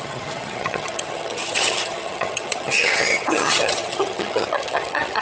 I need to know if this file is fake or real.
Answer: fake